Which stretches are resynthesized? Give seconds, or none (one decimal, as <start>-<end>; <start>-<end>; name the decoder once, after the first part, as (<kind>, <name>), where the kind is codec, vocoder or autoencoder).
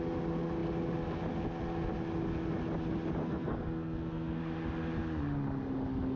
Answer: 3.2-4.4 (codec, SNAC)